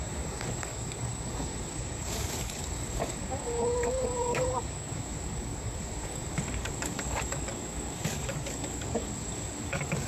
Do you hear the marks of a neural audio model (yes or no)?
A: yes